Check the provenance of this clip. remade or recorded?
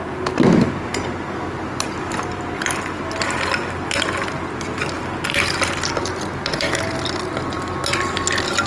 recorded